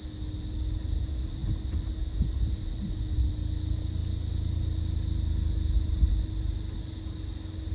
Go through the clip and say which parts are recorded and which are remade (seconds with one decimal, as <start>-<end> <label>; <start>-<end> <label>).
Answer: 0.0-7.7 recorded